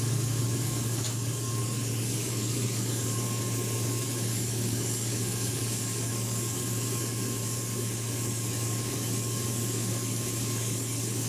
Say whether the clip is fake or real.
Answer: fake